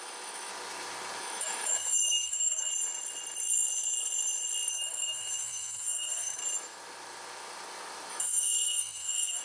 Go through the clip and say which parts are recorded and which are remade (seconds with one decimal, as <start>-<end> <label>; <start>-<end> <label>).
0.0-0.5 remade; 0.5-1.2 recorded; 1.2-2.7 remade; 2.7-4.7 recorded; 4.7-6.4 remade; 6.4-8.1 recorded; 8.1-9.4 remade